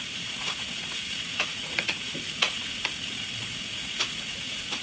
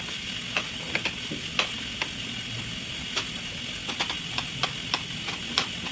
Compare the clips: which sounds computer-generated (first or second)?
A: first